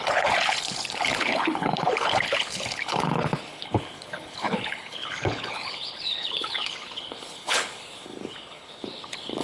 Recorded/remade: remade